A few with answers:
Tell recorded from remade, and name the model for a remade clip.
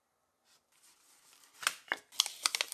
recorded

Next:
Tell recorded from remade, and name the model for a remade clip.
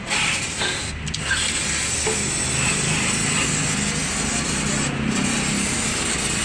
recorded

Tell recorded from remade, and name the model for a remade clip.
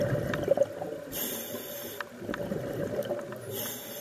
recorded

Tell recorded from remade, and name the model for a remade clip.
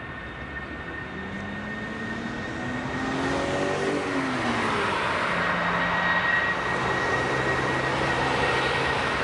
recorded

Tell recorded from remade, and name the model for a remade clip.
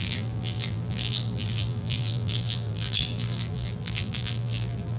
remade, vocoder, BigVGAN v2